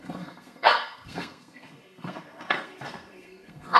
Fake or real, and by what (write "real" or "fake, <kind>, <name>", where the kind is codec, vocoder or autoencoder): fake, codec, SNAC